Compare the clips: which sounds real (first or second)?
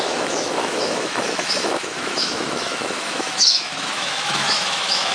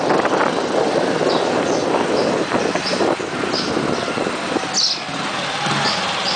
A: second